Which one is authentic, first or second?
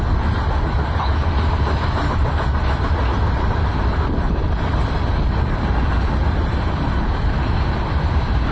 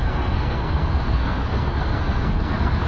first